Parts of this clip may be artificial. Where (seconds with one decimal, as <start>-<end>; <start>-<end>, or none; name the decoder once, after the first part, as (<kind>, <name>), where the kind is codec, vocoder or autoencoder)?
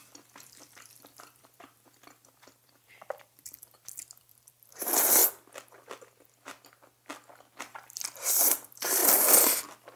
0.0-5.2 (vocoder, BigVGAN v2); 7.6-9.0